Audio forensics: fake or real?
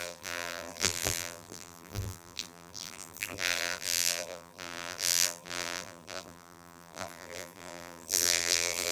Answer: fake